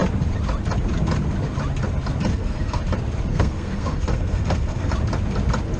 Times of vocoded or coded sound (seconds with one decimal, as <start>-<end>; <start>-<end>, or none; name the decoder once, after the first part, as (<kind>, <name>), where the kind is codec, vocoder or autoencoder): 2.3-2.8 (codec, SNAC); 3.3-4.9